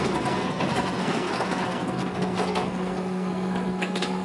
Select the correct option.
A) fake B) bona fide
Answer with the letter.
A